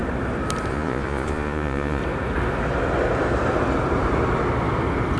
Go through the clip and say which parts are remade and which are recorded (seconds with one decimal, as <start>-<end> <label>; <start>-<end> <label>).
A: 0.0-0.7 recorded; 0.7-2.0 remade; 2.0-5.2 recorded